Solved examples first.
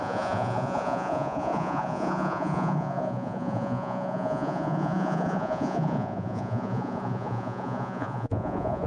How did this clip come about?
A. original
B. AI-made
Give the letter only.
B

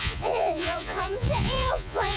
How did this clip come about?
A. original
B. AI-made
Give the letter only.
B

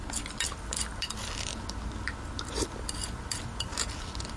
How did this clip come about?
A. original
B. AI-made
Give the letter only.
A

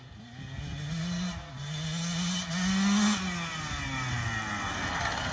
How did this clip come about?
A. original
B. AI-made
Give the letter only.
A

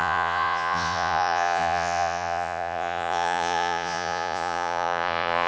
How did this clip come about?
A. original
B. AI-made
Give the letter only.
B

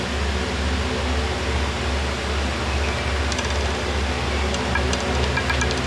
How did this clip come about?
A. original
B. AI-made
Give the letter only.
A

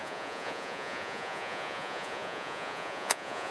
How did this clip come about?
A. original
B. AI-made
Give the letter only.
B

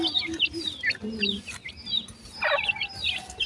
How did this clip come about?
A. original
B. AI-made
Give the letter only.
A